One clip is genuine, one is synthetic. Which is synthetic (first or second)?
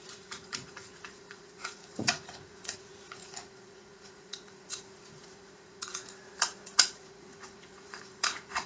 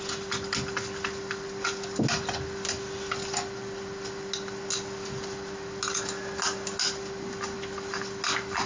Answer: first